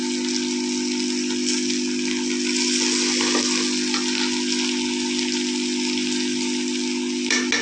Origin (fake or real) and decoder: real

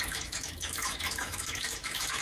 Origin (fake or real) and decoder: fake, autoencoder, DAC-VAE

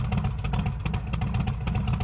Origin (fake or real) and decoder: real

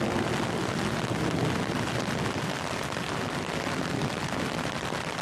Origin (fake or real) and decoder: real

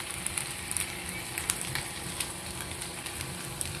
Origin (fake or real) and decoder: fake, vocoder, BigVGAN v2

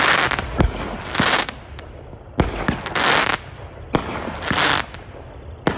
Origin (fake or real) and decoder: real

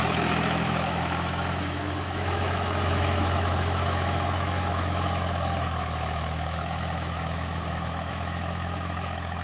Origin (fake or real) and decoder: fake, autoencoder, DAC-VAE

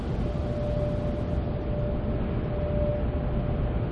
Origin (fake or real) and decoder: real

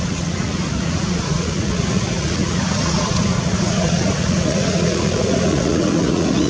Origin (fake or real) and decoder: fake, vocoder, Vocos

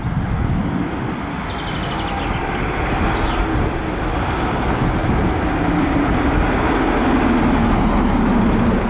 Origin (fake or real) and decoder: real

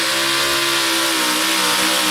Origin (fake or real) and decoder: real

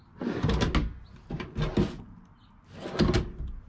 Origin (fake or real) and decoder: real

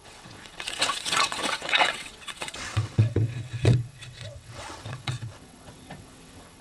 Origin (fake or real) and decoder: fake, vocoder, WaveNeXt